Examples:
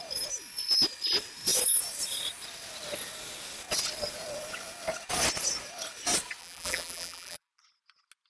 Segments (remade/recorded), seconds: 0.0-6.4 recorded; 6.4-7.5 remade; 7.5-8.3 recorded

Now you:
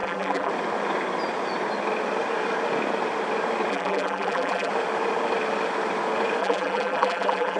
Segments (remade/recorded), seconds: 0.0-0.5 remade; 0.5-3.7 recorded; 3.7-4.7 remade; 4.7-6.4 recorded; 6.4-7.6 remade

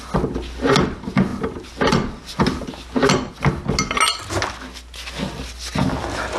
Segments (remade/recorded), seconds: 0.0-6.4 recorded

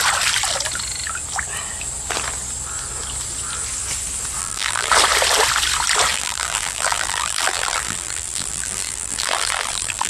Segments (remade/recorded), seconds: 0.0-4.4 recorded; 4.4-4.9 remade; 4.9-6.1 recorded; 6.1-10.1 remade